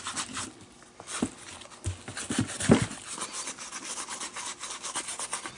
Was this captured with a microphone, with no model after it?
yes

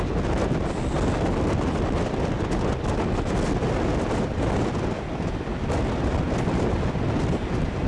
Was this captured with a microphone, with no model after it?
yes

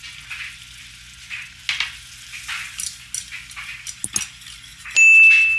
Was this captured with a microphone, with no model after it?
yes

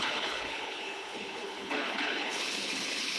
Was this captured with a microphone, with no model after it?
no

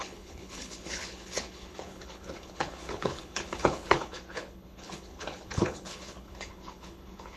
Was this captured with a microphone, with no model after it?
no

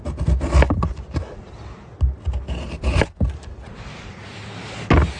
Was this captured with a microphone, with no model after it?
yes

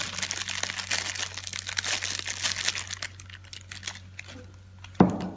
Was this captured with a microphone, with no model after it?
yes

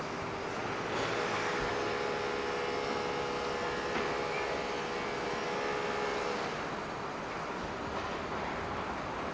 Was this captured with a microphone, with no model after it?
yes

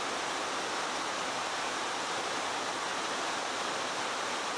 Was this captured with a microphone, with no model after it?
yes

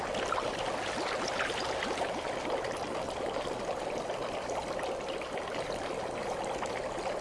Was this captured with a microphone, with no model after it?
yes